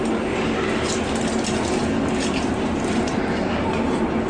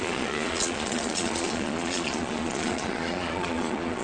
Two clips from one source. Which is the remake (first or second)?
second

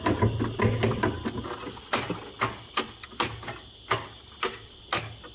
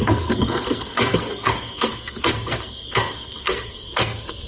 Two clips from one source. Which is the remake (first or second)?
second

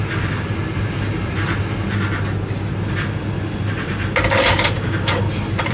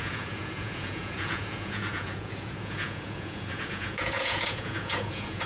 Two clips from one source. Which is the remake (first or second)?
second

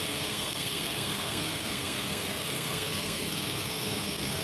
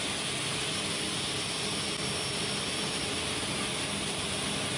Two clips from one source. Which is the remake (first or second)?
first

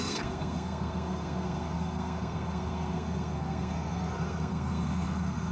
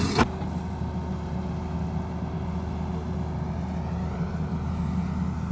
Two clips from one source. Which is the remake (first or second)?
first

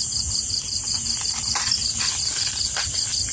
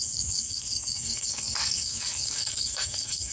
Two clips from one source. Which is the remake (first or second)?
second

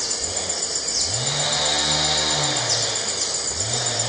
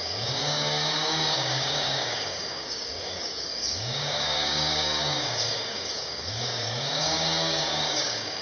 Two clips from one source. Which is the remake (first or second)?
second